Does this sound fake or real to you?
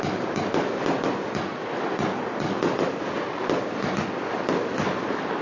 real